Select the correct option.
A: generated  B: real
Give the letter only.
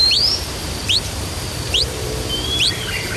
A